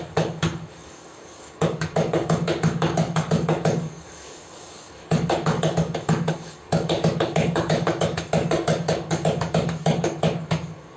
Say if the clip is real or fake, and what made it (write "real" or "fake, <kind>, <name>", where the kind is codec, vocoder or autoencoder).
fake, codec, DAC